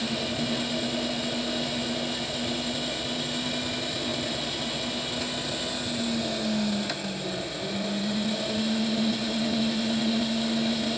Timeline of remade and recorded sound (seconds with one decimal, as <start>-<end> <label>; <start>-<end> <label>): 0.0-11.0 recorded